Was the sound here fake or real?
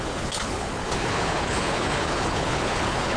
fake